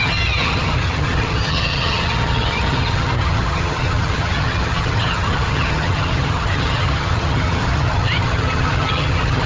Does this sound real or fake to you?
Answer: fake